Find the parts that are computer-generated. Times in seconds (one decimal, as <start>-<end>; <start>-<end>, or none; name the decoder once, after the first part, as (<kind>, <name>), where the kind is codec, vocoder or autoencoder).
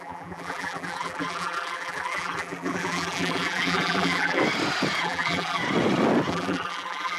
0.0-4.4 (vocoder, BigVGAN v2); 5.0-5.6; 6.3-7.2